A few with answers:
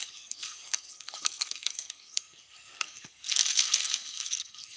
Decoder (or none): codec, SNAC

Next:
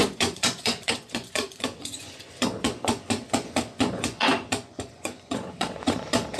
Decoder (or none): vocoder, Vocos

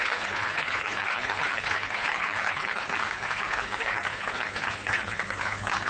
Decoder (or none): codec, HILCodec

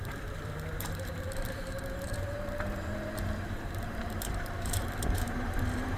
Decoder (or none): vocoder, BigVGAN v2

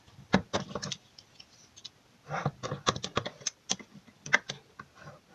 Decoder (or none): none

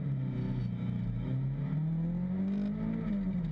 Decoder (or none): none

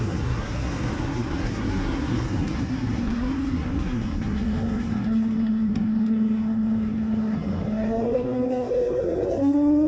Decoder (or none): codec, SNAC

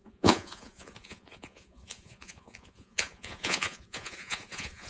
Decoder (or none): vocoder, Vocos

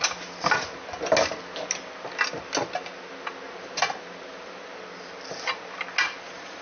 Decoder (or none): none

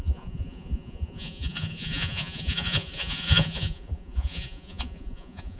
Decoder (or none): vocoder, Vocos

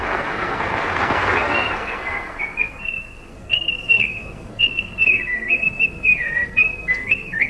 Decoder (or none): codec, SNAC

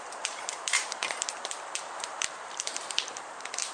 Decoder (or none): vocoder, BigVGAN v2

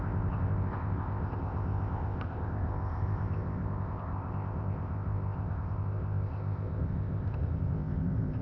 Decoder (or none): codec, ZipCodec